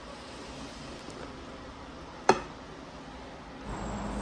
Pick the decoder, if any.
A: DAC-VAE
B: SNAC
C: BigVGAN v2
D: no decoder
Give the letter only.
D